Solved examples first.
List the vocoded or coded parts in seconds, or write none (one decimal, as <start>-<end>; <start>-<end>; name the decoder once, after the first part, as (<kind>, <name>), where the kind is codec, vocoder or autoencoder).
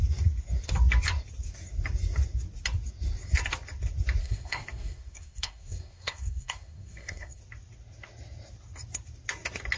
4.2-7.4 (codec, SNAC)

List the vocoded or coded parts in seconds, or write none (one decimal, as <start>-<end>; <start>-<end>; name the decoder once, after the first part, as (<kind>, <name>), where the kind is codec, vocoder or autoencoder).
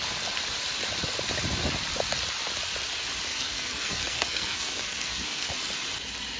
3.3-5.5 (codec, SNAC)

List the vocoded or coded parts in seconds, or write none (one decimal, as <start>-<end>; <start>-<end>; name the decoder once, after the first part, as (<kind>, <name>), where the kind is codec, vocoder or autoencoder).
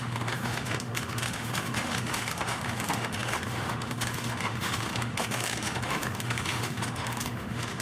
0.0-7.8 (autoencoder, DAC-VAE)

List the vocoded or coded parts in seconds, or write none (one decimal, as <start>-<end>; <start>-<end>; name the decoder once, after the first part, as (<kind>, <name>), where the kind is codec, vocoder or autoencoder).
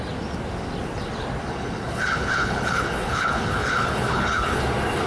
1.5-4.6 (codec, HILCodec)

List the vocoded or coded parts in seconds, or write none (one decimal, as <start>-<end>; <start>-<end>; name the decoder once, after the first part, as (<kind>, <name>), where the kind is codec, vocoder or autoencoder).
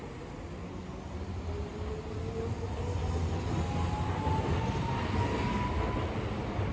none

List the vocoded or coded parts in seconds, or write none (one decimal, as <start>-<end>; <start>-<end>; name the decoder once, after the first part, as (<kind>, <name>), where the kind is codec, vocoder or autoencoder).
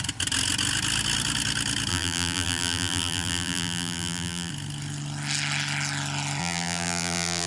1.9-4.5 (vocoder, BigVGAN v2); 6.4-7.5